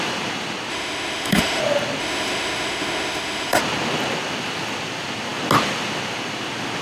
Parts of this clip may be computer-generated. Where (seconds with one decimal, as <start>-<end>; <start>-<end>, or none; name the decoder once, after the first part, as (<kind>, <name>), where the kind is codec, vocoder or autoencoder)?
0.7-1.6 (autoencoder, DAC-VAE); 2.0-3.6